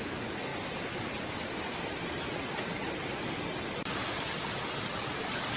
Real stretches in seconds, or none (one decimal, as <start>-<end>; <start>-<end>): 0.0-0.5; 1.9-5.6